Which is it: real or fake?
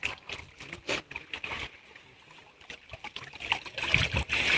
real